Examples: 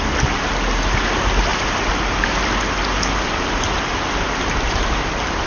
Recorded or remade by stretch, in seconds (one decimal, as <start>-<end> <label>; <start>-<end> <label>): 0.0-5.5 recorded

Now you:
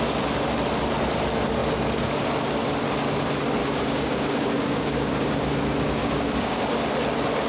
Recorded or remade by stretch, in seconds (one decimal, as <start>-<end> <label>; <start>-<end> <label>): 0.0-3.6 recorded; 3.6-5.3 remade; 5.3-6.0 recorded; 6.0-6.6 remade; 6.6-7.5 recorded

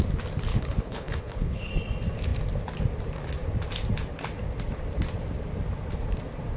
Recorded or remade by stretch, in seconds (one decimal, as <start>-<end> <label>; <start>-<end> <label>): 0.0-0.5 recorded; 0.5-1.7 remade; 1.7-6.6 recorded

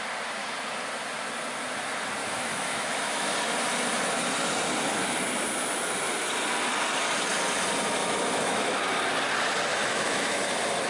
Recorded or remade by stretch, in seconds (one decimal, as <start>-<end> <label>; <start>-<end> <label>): 0.0-2.2 recorded; 2.2-3.3 remade; 3.3-8.0 recorded; 8.0-8.8 remade; 8.8-9.7 recorded; 9.7-10.4 remade; 10.4-10.9 recorded

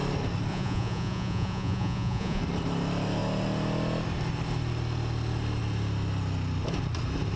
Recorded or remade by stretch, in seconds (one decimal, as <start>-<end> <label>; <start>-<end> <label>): 0.0-0.5 recorded; 0.5-2.4 remade; 2.4-7.4 recorded

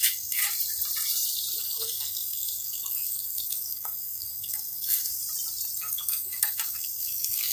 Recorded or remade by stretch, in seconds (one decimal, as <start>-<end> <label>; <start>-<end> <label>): 0.0-0.4 remade; 0.4-1.6 recorded; 1.6-5.2 remade; 5.2-5.8 recorded; 5.8-7.5 remade

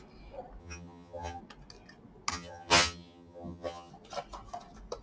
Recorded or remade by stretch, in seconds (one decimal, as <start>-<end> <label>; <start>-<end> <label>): 0.0-0.6 recorded; 0.6-1.4 remade; 1.4-2.3 recorded; 2.3-3.9 remade; 3.9-5.0 recorded